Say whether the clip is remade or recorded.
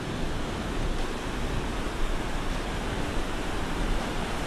recorded